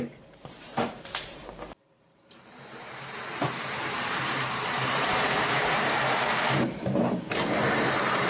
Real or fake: fake